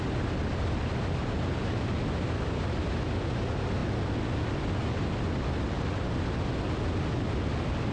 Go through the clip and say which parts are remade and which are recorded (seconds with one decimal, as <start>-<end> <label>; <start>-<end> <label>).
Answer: 0.0-1.2 recorded; 1.2-1.9 remade; 1.9-7.9 recorded